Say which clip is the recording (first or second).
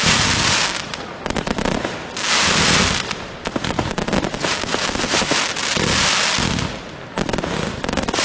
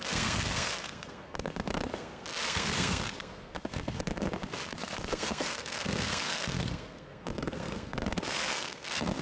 first